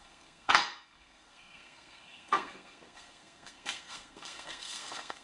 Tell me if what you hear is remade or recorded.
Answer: remade